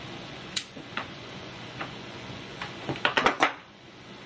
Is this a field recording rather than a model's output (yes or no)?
no